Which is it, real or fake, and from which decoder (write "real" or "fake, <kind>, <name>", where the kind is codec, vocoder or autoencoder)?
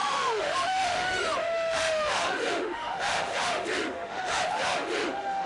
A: fake, autoencoder, DAC-VAE